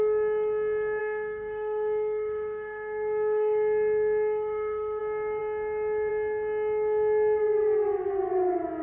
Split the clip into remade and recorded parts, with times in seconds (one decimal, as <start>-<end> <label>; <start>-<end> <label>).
0.0-1.0 recorded; 1.0-5.0 remade; 5.0-8.8 recorded